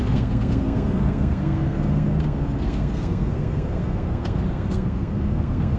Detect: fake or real fake